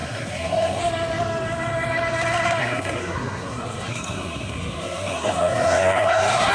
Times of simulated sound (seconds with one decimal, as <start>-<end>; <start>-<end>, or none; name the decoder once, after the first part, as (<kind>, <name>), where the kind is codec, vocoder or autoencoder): 0.0-0.8 (codec, SNAC); 2.6-6.5